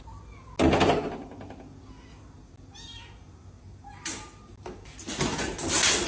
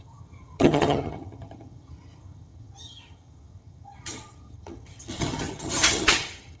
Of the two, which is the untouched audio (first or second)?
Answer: first